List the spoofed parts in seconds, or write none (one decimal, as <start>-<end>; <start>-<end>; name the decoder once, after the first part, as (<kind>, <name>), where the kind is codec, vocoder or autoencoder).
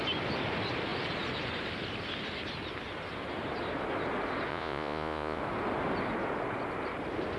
4.5-5.4 (vocoder, Vocos)